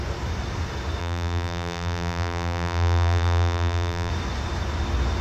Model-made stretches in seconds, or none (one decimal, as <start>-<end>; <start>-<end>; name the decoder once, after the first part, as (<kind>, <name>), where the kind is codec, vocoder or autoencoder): 1.0-4.1 (vocoder, BigVGAN v2)